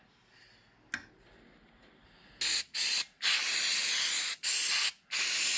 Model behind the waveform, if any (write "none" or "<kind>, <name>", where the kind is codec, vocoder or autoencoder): none